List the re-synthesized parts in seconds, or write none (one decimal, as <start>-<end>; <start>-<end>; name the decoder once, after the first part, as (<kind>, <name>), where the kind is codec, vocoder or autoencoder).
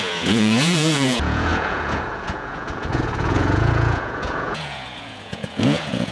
0.0-6.1 (vocoder, Vocos)